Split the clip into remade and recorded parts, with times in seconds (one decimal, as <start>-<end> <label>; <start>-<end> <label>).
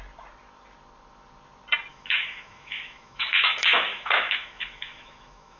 0.0-1.9 recorded; 1.9-5.6 remade